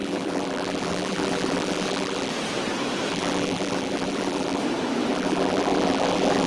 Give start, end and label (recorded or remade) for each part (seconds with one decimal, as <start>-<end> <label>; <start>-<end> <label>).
0.0-2.3 remade; 2.3-3.1 recorded; 3.1-4.6 remade; 4.6-5.1 recorded; 5.1-6.5 remade